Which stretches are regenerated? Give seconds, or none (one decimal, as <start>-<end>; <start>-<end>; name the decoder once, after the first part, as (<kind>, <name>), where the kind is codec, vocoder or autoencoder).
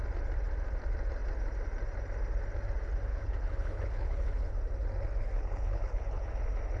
3.1-4.5 (codec, HILCodec); 5.2-6.3